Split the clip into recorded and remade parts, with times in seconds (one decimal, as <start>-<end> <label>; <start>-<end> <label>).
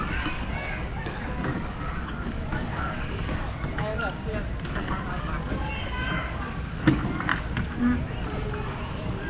0.0-3.9 remade; 3.9-4.6 recorded; 4.6-7.3 remade; 7.3-8.9 recorded; 8.9-9.3 remade